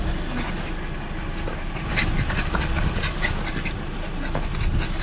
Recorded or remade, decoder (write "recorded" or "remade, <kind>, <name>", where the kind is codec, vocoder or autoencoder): recorded